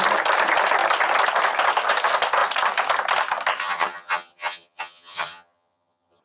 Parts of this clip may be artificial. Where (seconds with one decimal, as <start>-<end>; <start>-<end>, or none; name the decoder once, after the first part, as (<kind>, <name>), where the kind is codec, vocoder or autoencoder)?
3.6-6.2 (vocoder, HiFi-GAN)